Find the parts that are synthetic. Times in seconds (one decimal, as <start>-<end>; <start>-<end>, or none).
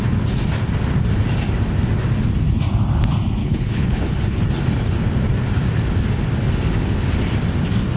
3.4-4.4